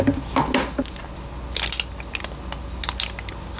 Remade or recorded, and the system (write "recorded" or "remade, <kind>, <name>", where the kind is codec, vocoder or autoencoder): recorded